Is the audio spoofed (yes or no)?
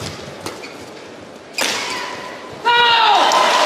no